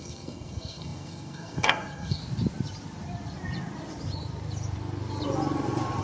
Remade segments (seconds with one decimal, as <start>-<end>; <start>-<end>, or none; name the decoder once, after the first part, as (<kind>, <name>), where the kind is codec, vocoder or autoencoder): 0.0-2.2 (codec, SNAC)